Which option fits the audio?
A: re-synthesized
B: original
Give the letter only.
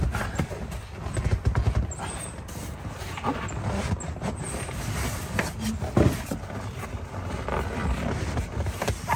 B